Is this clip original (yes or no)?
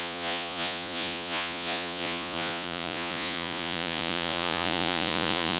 no